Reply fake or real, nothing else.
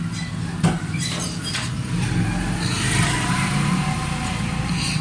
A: real